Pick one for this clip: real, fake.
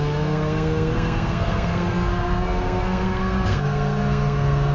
fake